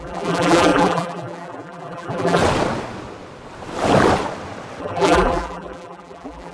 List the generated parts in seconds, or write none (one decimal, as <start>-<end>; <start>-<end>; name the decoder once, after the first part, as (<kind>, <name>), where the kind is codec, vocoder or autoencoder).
0.0-2.4 (vocoder, BigVGAN v2); 4.8-6.5

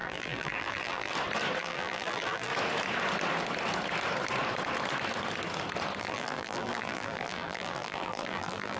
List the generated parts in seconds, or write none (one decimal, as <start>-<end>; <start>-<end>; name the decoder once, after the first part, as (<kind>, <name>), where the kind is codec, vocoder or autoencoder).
0.0-1.1 (vocoder, BigVGAN v2); 1.6-2.5; 6.0-8.8

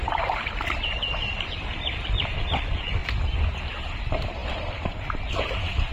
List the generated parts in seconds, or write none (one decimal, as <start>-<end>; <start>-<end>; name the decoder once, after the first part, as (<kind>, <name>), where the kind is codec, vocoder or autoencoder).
0.0-3.0 (vocoder, BigVGAN v2); 3.9-5.9

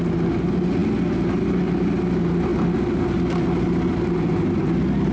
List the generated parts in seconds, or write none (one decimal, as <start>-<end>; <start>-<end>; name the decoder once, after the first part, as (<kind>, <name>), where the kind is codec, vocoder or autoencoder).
none

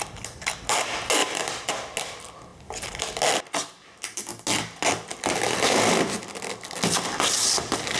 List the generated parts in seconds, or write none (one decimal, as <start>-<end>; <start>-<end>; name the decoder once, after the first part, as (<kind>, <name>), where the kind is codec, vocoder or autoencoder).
1.2-1.7 (vocoder, BigVGAN v2)

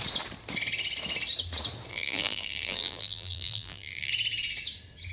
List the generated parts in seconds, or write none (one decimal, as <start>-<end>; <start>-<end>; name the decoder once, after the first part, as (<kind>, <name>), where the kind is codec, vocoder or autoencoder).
1.9-4.1 (vocoder, BigVGAN v2)

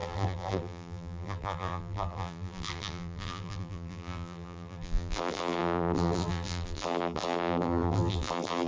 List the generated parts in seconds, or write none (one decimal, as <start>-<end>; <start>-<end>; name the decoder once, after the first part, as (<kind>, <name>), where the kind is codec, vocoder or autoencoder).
0.0-8.7 (vocoder, BigVGAN v2)

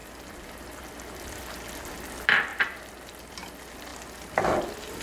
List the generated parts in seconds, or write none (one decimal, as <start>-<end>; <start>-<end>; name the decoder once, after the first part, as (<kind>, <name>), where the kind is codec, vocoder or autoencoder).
0.0-0.8 (vocoder, BigVGAN v2); 2.5-3.3